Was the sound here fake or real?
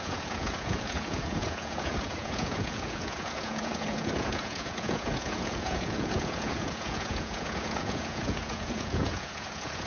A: fake